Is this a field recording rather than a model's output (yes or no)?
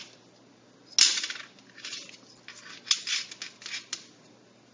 yes